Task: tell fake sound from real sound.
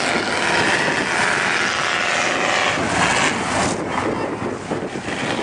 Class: real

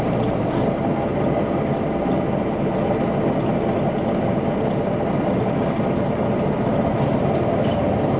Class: real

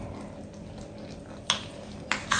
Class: real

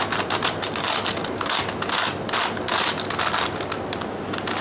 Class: real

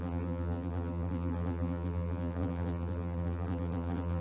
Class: fake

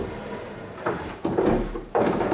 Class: fake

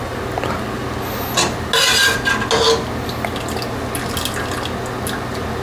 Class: real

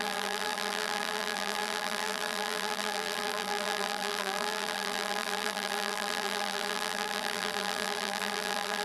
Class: fake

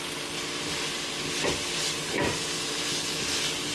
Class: real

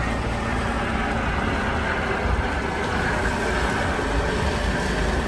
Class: real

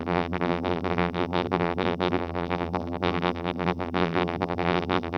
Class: fake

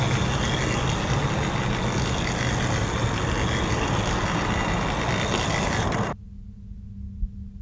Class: real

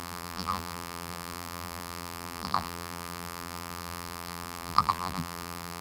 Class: fake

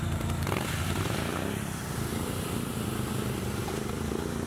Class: fake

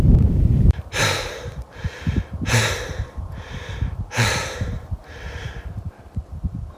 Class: fake